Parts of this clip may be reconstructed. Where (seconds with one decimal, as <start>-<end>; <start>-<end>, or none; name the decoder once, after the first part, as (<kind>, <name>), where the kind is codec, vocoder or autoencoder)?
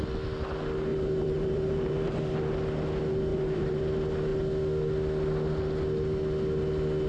0.9-2.3 (vocoder, BigVGAN v2); 3.3-3.8